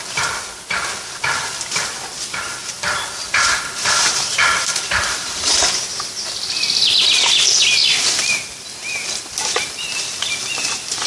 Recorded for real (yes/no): yes